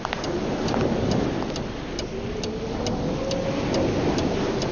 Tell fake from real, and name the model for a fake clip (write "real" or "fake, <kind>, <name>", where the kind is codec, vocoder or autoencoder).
real